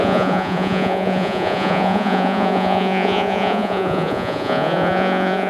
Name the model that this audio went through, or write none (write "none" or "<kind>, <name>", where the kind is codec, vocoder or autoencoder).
vocoder, Vocos